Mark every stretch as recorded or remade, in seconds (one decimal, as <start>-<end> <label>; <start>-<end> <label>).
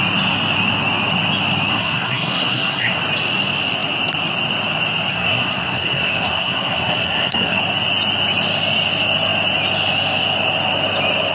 0.0-1.7 recorded; 1.7-3.0 remade; 3.0-5.1 recorded; 5.1-7.6 remade; 7.6-11.3 recorded